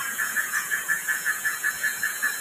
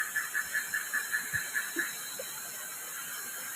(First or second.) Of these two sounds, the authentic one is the second